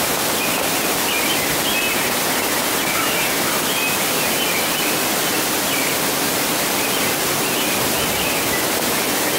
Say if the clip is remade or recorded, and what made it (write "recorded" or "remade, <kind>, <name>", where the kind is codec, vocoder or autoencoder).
recorded